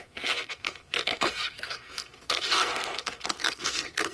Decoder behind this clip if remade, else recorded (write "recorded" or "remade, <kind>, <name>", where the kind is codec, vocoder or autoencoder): remade, codec, SNAC